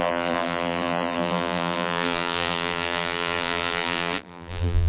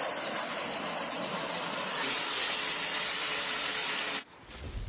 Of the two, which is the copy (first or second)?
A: first